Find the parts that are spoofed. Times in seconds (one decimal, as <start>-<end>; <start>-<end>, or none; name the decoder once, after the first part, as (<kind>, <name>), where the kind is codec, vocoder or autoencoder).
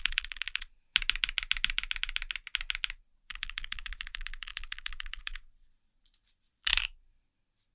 0.0-0.9 (vocoder, Vocos); 3.0-6.7